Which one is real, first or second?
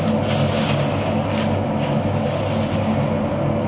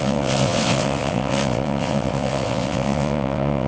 first